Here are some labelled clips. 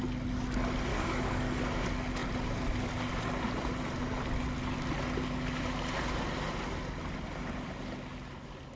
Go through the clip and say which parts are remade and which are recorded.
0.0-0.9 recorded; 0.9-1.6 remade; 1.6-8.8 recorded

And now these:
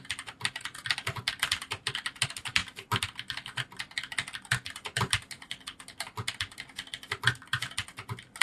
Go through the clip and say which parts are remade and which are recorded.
0.0-8.4 recorded